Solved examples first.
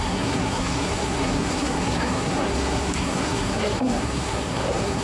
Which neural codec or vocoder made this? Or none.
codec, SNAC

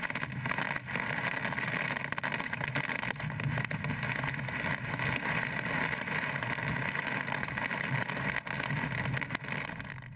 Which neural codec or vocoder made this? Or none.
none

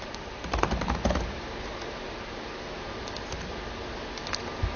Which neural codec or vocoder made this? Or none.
vocoder, BigVGAN v2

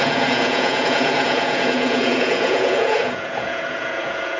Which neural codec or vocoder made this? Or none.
vocoder, Vocos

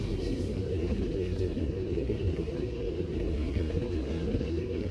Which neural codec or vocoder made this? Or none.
codec, SNAC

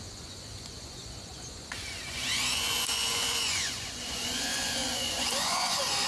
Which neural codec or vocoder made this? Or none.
vocoder, Vocos